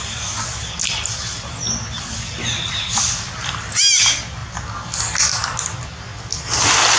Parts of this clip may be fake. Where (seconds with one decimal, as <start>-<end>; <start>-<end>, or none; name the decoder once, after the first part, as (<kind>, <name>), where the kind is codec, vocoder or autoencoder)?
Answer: none